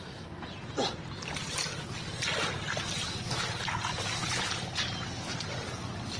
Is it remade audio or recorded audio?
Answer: recorded